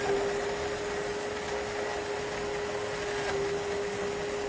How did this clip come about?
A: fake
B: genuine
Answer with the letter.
B